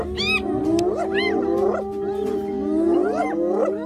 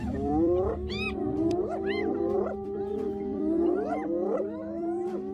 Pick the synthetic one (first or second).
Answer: second